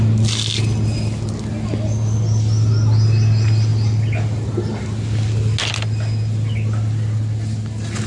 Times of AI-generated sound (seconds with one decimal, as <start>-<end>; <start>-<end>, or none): none